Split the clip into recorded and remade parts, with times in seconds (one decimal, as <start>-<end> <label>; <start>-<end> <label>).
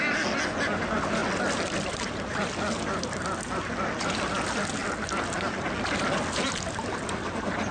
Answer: 0.0-7.7 recorded